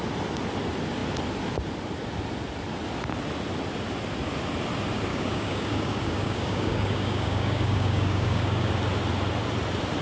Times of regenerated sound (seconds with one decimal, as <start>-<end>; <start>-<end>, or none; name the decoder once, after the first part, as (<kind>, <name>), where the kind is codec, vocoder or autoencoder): 5.1-8.7 (codec, DAC)